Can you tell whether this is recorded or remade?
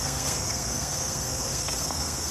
remade